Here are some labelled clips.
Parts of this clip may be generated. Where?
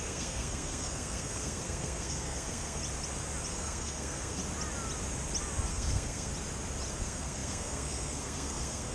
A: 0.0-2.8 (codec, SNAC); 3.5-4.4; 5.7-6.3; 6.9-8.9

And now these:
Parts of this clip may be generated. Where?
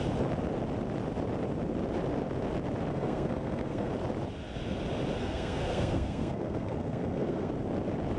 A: 2.9-3.9 (codec, SNAC); 5.2-7.5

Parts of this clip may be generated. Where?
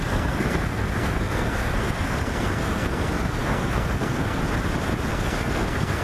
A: 0.0-4.4 (codec, SNAC); 5.1-6.0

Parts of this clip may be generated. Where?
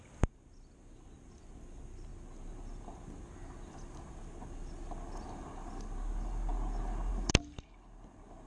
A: none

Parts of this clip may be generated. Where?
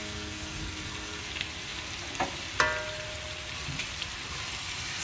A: 0.0-1.2 (codec, SNAC)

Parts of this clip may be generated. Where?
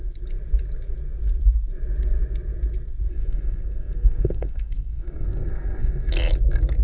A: 3.1-6.1 (codec, SNAC)